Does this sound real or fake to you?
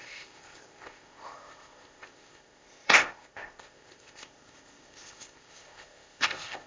fake